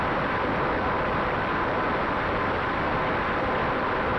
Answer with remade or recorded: recorded